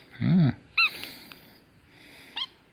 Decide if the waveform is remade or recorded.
recorded